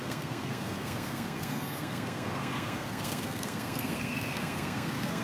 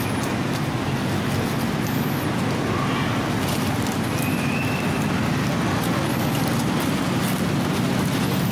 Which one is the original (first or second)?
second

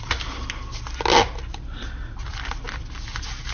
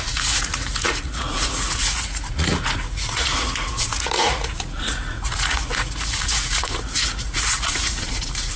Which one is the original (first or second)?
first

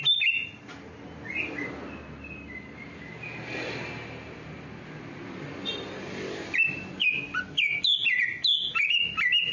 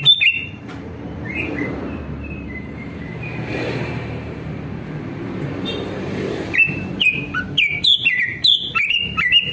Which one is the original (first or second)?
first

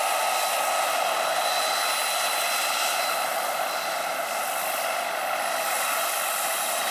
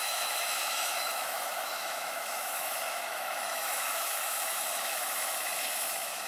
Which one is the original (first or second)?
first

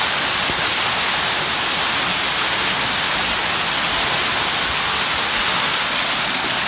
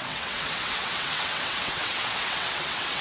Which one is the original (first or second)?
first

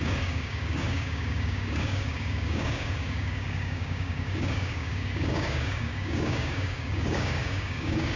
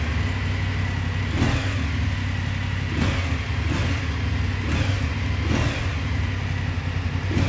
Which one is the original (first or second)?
second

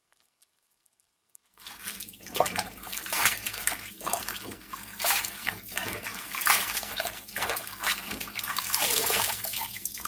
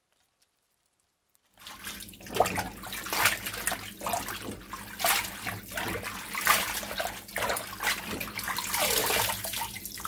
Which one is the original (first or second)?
second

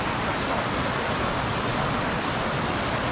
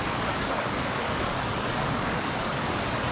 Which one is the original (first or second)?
first